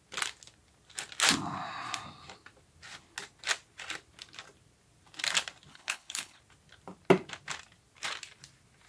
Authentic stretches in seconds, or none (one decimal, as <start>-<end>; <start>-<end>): 0.0-5.7; 6.4-8.9